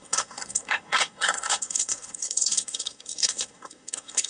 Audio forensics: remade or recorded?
remade